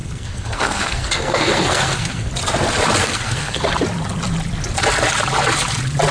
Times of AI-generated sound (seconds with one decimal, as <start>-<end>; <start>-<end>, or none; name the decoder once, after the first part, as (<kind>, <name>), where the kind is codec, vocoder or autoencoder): 0.0-2.3 (codec, SNAC); 3.0-3.6